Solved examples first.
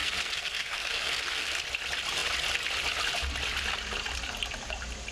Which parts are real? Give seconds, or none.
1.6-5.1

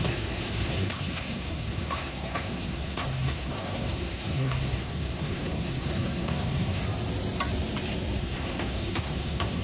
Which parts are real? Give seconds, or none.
6.8-8.2

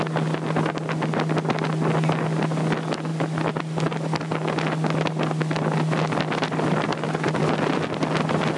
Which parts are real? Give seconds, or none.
0.0-8.6

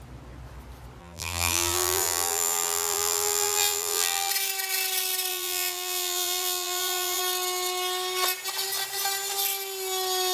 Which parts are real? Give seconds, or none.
0.0-1.0; 4.3-5.3; 7.2-10.3